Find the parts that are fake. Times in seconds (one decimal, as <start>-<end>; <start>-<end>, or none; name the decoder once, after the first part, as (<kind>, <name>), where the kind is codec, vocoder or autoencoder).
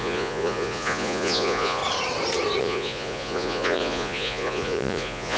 0.0-1.8 (vocoder, Vocos); 2.6-5.4